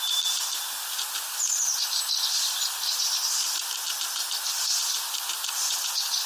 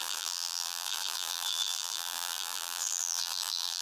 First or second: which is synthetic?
second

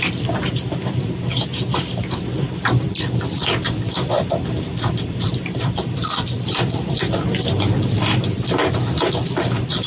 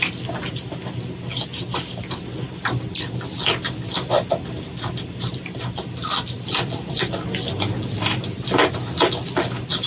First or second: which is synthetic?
first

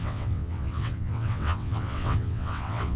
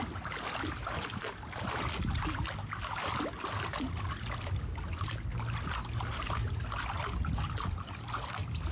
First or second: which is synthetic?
first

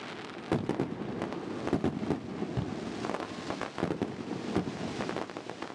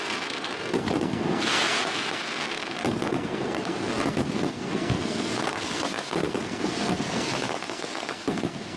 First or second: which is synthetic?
second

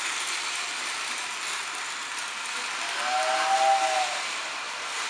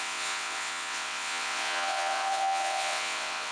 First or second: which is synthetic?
second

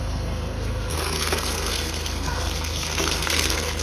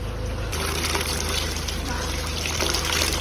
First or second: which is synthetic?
first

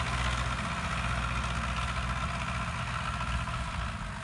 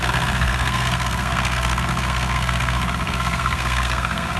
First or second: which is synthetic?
second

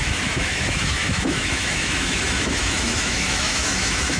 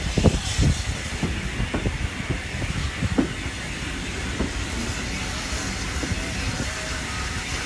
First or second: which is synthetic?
first